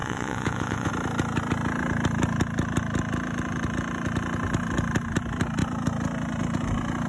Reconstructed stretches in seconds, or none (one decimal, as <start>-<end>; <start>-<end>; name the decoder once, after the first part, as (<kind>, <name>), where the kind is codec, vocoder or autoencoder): 0.0-0.9 (vocoder, Vocos)